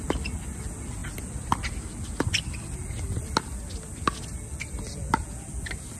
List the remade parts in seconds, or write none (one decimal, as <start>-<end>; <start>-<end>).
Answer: none